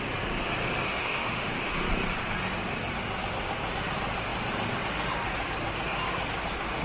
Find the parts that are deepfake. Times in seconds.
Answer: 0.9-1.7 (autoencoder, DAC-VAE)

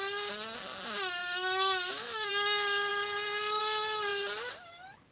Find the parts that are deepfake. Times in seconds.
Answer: 1.2-2.3 (autoencoder, DAC-VAE)

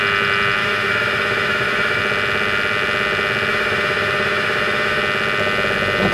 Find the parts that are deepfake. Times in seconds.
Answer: 0.6-2.0 (autoencoder, DAC-VAE); 3.5-5.0

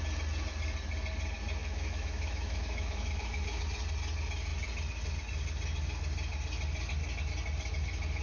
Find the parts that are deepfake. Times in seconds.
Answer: 1.6-3.6 (autoencoder, DAC-VAE)

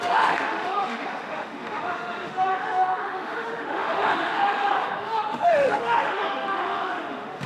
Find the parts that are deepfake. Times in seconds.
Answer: 0.0-7.5 (autoencoder, DAC-VAE)

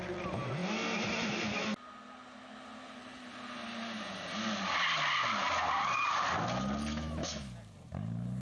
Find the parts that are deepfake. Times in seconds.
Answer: 6.9-7.5 (autoencoder, DAC-VAE)